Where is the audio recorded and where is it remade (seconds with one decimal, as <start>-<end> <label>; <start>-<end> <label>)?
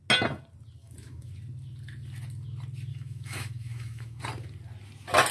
0.0-0.8 recorded; 0.8-1.3 remade; 1.3-2.9 recorded; 2.9-4.2 remade; 4.2-5.3 recorded